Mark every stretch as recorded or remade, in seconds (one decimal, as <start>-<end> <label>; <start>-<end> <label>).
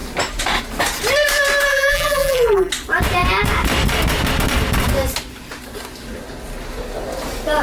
0.0-1.7 recorded; 1.7-2.7 remade; 2.7-7.6 recorded